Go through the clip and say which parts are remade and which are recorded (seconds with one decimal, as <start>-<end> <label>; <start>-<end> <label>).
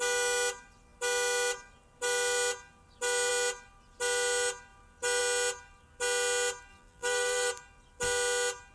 0.0-6.7 recorded; 6.7-7.5 remade; 7.5-8.7 recorded